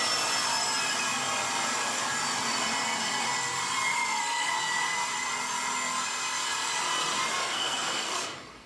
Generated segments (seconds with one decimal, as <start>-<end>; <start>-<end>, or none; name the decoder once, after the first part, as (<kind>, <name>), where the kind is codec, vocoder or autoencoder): 3.9-4.5 (codec, SNAC); 7.4-8.7